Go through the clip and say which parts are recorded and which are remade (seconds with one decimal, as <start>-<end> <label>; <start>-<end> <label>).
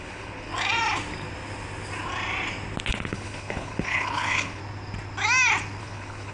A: 0.0-0.5 remade; 0.5-2.9 recorded; 2.9-4.6 remade; 4.6-5.8 recorded; 5.8-6.3 remade